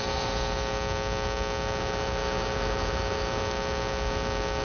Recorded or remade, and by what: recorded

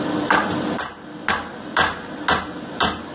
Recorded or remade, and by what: recorded